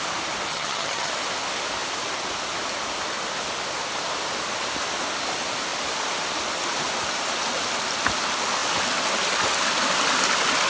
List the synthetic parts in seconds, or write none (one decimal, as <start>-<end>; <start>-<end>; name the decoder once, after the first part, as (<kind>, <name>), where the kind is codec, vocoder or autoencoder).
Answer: 0.5-1.1 (vocoder, HiFi-GAN)